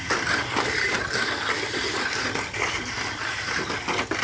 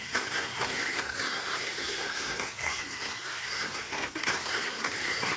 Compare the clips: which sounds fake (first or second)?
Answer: second